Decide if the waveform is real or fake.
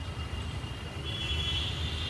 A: real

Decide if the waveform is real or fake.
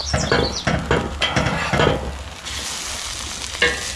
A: real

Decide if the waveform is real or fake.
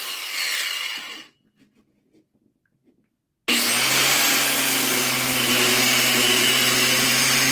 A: real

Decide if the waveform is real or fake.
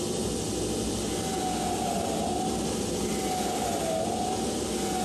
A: real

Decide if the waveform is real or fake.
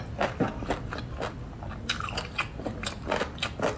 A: real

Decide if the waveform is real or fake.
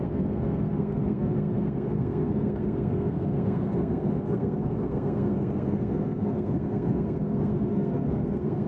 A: fake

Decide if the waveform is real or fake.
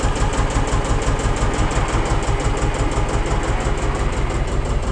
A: real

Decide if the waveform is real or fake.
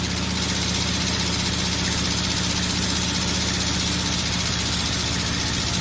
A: real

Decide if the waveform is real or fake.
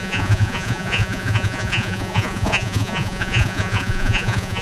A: fake